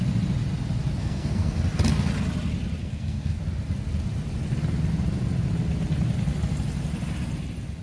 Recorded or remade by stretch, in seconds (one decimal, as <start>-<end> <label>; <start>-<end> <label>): 0.0-1.0 recorded; 1.0-1.6 remade; 1.6-2.8 recorded; 2.8-3.4 remade; 3.4-7.8 recorded